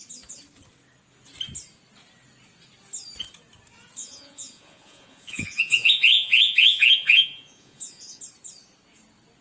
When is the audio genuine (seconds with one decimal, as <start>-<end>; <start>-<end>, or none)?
0.0-4.0; 8.2-9.4